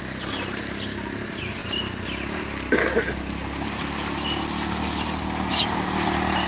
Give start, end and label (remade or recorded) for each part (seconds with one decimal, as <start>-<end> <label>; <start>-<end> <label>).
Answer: 0.0-6.5 recorded